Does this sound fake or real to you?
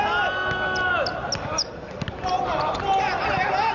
real